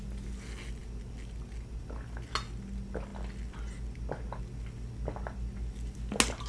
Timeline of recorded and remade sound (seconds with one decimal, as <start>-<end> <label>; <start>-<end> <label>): 0.0-6.5 recorded